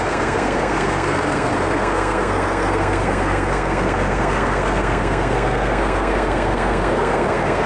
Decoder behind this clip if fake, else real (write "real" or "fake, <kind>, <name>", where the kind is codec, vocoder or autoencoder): fake, codec, SNAC